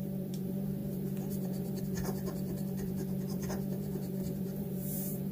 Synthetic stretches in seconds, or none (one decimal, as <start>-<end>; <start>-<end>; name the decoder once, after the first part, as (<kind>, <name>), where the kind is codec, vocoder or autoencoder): 0.0-5.3 (vocoder, BigVGAN v2)